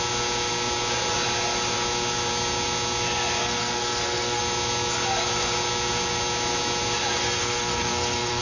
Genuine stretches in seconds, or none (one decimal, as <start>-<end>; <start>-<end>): 0.0-3.4; 4.4-7.2